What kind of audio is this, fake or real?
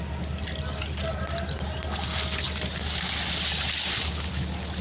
real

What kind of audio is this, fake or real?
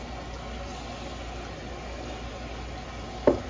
real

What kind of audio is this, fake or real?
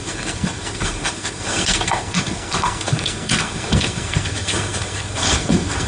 fake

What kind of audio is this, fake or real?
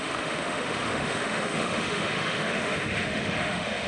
fake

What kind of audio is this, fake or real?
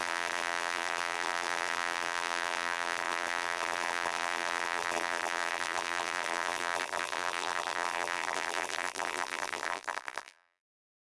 fake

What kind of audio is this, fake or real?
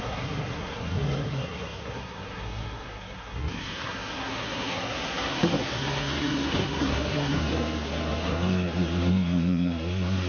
fake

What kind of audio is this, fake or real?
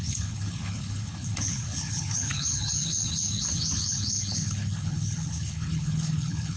fake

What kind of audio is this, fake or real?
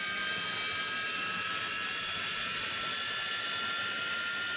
real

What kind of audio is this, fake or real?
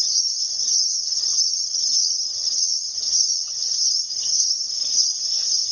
fake